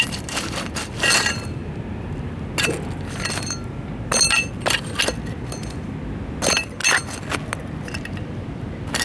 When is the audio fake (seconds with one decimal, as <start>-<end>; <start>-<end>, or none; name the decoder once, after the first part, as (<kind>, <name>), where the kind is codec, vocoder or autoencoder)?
none